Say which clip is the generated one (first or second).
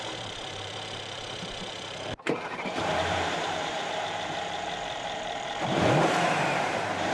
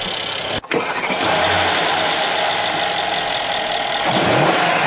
first